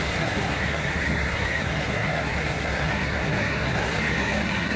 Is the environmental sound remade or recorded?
remade